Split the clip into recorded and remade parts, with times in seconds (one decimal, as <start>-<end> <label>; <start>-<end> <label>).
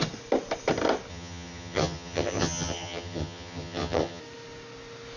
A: 0.0-1.1 recorded; 1.1-4.2 remade; 4.2-5.2 recorded